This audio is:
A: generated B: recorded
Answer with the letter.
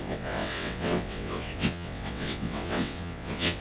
A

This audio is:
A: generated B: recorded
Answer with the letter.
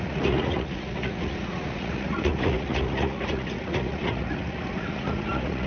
A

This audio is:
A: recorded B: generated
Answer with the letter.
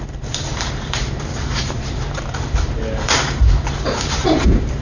B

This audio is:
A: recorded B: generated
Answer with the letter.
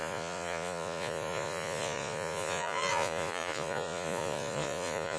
B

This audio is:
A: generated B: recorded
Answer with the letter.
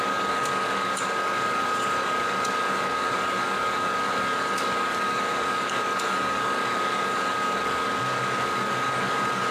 A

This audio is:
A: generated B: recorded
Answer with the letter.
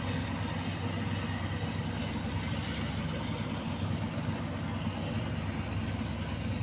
B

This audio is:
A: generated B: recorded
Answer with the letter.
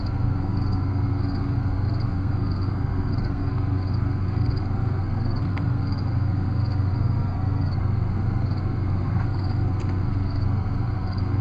A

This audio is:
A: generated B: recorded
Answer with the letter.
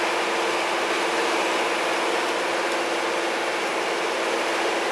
B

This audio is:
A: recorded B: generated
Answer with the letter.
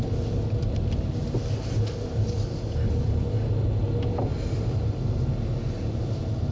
A